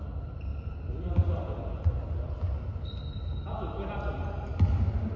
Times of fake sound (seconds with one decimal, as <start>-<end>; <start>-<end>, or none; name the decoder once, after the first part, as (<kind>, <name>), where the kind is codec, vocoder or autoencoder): none